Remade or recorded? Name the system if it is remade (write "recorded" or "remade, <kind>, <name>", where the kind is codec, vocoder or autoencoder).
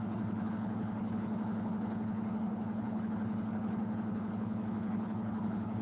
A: remade, codec, HILCodec